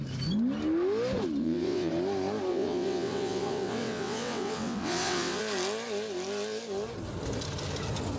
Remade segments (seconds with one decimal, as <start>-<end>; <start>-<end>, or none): 1.4-1.9; 2.5-5.4